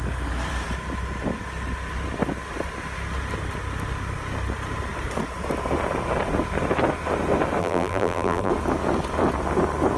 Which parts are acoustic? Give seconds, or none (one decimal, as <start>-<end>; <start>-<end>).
0.0-7.6; 8.5-10.0